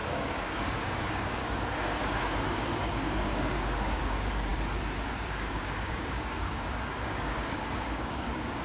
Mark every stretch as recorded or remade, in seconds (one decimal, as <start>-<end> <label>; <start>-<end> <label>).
0.0-4.5 remade; 4.5-5.1 recorded; 5.1-8.6 remade